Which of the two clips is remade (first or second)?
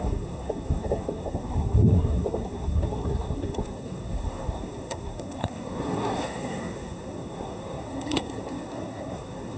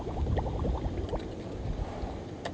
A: first